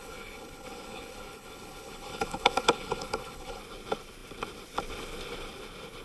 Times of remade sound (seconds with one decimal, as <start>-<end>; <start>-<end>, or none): 0.0-3.6